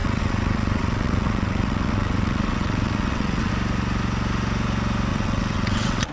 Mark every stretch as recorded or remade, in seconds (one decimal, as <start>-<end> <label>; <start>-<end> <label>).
0.0-3.5 remade; 3.5-5.1 recorded; 5.1-6.1 remade